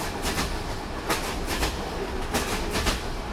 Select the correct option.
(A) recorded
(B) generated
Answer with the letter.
A